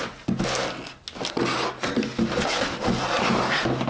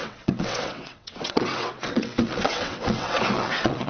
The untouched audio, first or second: first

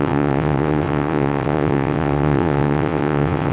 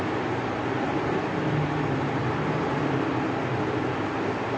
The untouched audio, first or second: second